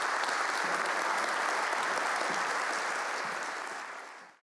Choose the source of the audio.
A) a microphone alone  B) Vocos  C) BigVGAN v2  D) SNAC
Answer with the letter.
A